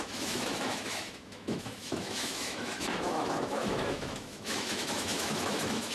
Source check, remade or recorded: remade